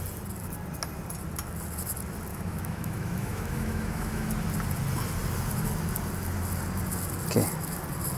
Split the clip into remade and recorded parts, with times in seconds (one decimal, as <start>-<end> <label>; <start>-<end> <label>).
0.0-2.3 recorded; 2.3-4.3 remade; 4.3-8.2 recorded

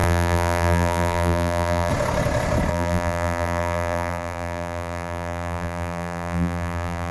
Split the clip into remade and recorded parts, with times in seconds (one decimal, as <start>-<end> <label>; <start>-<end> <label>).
0.0-1.9 remade; 1.9-2.7 recorded; 2.7-7.1 remade

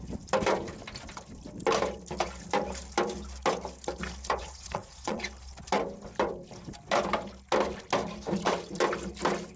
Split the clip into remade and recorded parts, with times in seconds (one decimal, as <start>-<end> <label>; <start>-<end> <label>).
0.0-4.4 recorded; 4.4-5.2 remade; 5.2-9.6 recorded

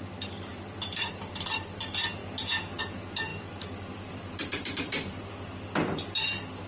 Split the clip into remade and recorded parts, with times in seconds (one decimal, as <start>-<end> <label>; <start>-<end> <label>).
0.0-0.5 recorded; 0.5-1.8 remade; 1.8-3.3 recorded; 3.3-5.5 remade; 5.5-6.7 recorded